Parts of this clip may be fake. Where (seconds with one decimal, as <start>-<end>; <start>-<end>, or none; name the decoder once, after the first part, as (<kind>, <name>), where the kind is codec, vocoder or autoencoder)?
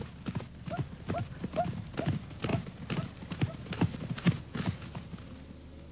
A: none